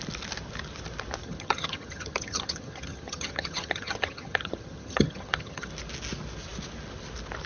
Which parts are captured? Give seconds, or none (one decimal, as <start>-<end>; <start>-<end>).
0.0-1.2; 5.7-7.5